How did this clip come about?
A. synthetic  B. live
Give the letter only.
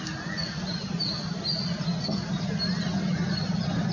B